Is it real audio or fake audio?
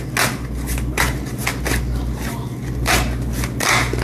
real